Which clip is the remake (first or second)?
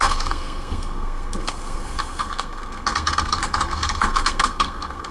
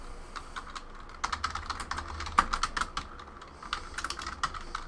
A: first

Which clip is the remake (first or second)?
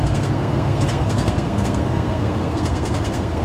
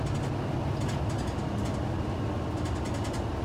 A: first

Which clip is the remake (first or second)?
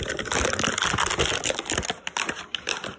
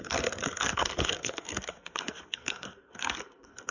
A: second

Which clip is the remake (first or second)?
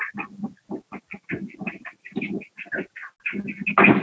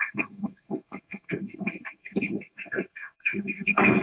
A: second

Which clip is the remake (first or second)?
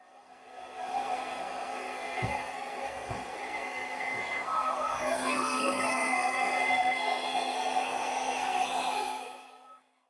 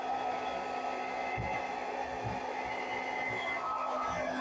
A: first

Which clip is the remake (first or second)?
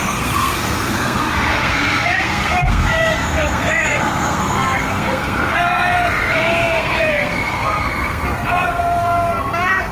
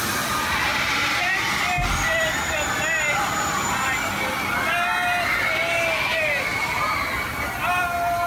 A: first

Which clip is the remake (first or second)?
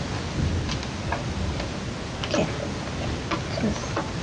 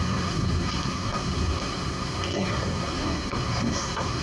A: second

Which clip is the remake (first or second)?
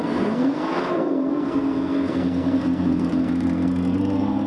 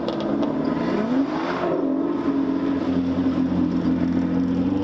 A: first